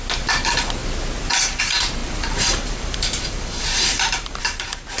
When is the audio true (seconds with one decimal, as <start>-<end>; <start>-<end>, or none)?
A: 0.0-2.0; 4.4-5.0